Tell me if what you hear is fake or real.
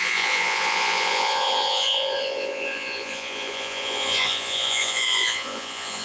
fake